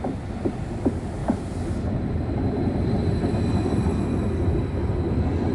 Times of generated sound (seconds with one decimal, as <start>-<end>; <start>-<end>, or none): 1.2-3.3